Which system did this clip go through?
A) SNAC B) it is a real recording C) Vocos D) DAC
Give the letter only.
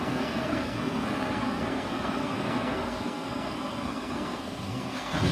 A